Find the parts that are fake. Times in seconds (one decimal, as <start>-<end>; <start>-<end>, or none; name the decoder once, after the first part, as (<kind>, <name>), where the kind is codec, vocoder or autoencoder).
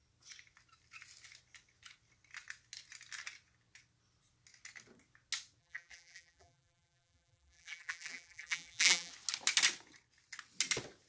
5.6-9.1 (vocoder, BigVGAN v2)